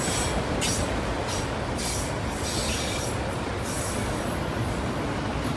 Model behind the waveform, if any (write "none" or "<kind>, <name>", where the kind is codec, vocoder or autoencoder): none